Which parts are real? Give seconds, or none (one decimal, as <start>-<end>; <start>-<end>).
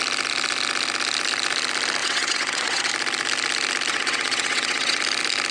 0.0-2.0; 2.9-3.9; 5.0-5.5